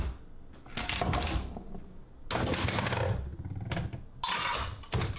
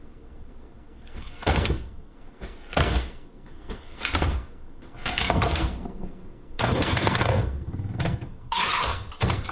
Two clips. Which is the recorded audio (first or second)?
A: first